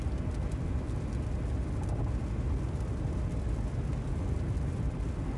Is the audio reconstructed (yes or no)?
no